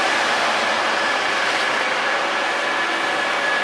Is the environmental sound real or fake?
real